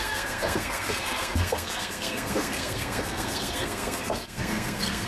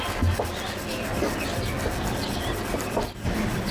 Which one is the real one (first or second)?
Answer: second